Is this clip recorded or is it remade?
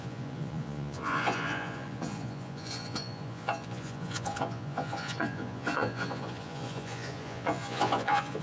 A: remade